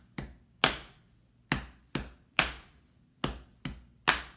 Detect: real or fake real